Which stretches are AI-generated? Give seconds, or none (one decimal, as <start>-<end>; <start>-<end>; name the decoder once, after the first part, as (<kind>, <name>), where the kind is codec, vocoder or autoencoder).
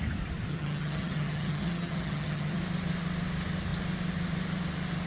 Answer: 0.5-2.6 (vocoder, HiFi-GAN)